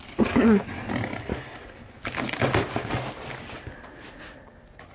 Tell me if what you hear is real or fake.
real